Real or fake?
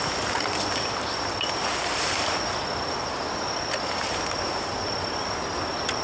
real